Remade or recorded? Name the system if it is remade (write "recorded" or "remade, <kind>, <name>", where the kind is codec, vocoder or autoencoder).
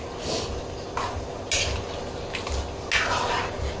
recorded